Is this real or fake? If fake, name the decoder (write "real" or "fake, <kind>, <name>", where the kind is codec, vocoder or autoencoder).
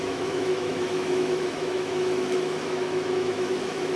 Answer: fake, autoencoder, DAC-VAE